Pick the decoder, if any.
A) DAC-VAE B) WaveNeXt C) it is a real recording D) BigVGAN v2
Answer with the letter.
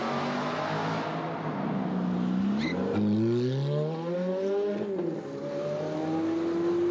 C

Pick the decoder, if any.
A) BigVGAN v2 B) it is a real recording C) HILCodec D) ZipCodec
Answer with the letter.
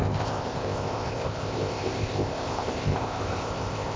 D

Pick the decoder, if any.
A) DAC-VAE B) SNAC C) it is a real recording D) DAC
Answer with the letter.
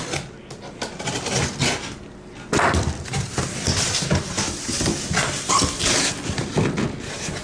C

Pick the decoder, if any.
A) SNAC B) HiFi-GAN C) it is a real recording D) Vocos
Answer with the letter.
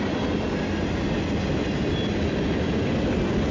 C